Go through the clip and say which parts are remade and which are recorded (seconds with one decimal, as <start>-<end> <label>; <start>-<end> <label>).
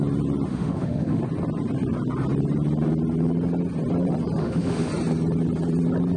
0.0-0.5 recorded; 0.5-1.2 remade; 1.2-4.4 recorded; 4.4-4.9 remade; 4.9-6.2 recorded